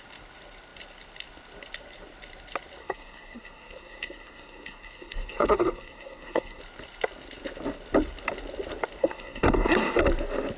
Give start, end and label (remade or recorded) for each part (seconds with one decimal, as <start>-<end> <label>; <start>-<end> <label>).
0.0-2.8 recorded; 2.8-6.6 remade; 6.6-9.0 recorded; 9.0-10.0 remade; 10.0-10.6 recorded